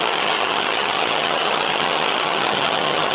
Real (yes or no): no